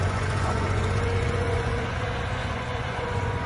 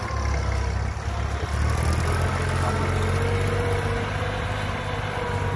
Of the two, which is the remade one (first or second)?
first